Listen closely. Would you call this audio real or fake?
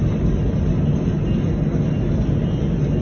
real